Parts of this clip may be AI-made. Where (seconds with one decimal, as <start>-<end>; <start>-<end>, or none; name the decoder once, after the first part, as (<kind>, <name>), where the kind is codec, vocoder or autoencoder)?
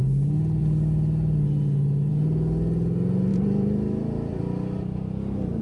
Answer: 3.3-4.4 (vocoder, BigVGAN v2)